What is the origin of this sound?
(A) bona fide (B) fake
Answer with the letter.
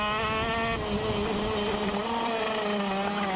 A